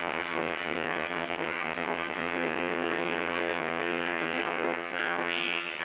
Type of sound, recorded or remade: remade